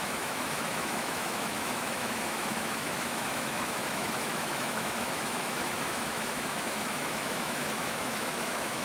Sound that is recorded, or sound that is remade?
remade